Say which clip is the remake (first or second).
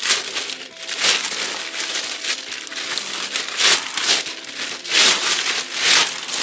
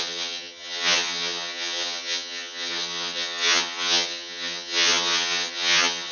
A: second